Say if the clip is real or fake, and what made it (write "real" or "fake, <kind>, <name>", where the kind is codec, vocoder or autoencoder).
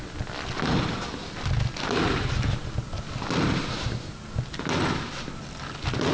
real